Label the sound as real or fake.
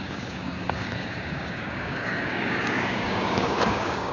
fake